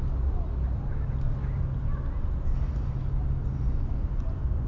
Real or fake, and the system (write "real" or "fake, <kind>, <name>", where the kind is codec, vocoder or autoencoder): real